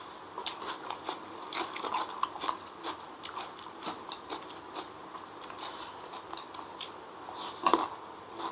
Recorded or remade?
recorded